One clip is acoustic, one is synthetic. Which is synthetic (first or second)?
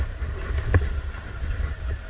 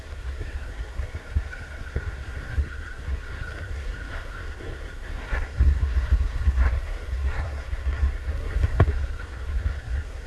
second